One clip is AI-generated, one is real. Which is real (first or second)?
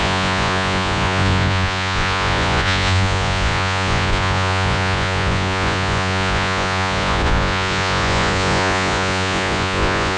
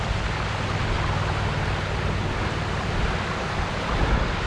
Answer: second